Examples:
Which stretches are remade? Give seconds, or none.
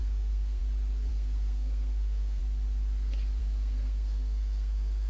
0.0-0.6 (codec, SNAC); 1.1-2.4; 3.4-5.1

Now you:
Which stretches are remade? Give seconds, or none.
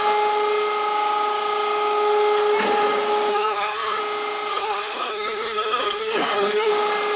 3.3-4.0 (codec, SNAC); 4.5-6.7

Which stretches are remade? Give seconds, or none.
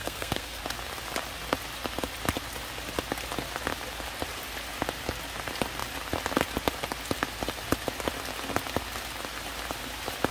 0.0-0.6 (codec, SNAC)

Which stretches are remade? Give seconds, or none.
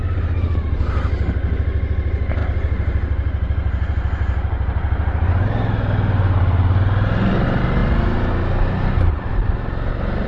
none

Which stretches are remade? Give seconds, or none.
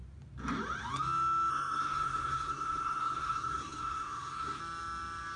1.5-4.6 (codec, SNAC)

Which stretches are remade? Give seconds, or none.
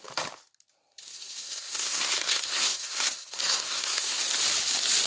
1.1-4.2 (codec, SNAC)